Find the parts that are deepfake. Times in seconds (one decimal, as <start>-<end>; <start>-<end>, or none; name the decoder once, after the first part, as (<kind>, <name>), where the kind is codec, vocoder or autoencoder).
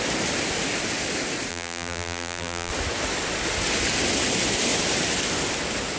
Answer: 1.5-2.7 (vocoder, BigVGAN v2)